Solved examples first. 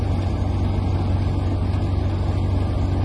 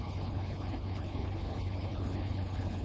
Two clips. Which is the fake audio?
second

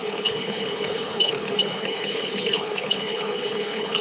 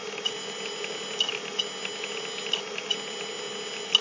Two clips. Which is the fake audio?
first